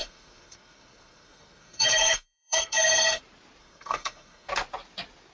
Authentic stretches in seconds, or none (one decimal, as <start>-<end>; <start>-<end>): 3.2-3.6; 4.5-5.3

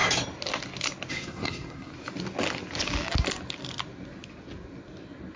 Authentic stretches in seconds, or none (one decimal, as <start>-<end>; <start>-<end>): 0.0-1.1; 1.9-5.4

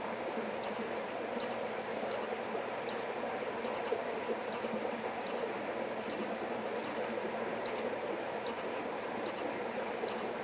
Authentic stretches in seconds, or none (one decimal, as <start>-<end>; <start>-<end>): 0.0-10.4

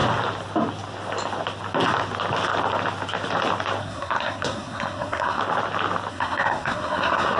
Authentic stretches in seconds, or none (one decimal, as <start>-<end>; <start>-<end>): 0.0-3.8; 5.4-6.1

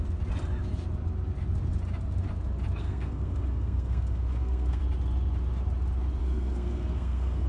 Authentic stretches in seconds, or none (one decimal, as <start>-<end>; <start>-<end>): 0.0-2.8; 4.8-6.2

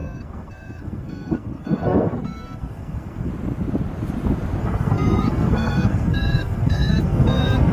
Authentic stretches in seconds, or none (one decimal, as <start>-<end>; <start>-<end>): 3.3-4.6